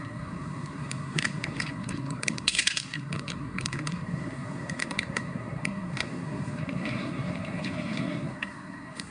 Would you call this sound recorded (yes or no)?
no